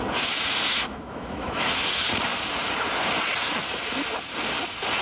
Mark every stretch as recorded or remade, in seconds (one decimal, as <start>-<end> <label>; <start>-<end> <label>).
0.0-0.7 recorded; 0.7-1.7 remade; 1.7-5.0 recorded